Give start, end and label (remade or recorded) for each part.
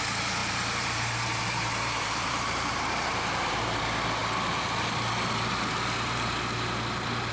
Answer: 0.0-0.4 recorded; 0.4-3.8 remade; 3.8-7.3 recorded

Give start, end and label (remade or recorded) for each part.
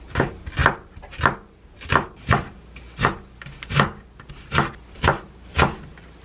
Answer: 0.0-6.2 recorded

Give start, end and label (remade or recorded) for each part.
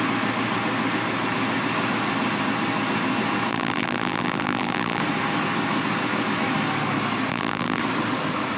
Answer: 0.0-3.5 recorded; 3.5-5.0 remade; 5.0-7.3 recorded; 7.3-7.8 remade; 7.8-8.6 recorded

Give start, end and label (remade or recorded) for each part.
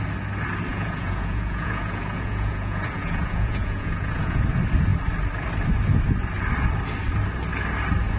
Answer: 0.0-0.7 recorded; 0.7-4.4 remade; 4.4-8.2 recorded